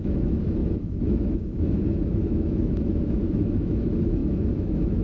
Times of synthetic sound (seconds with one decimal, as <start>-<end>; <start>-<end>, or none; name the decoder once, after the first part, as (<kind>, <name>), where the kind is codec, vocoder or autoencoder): 0.0-5.0 (autoencoder, DAC-VAE)